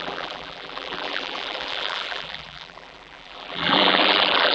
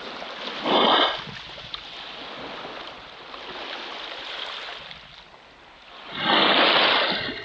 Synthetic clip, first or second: first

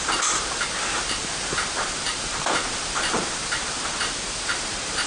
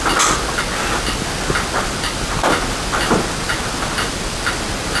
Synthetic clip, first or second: first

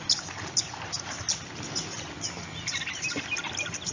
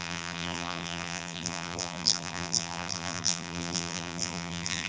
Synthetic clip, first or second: second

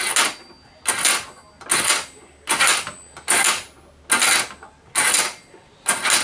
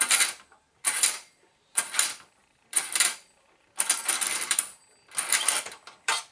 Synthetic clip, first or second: second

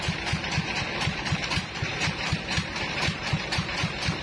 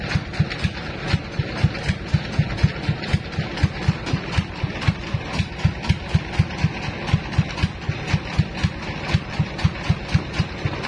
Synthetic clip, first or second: first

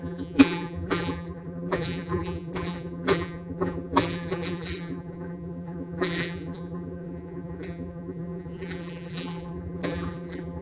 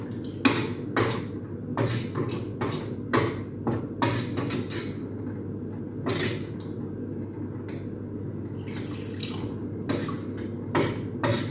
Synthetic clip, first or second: first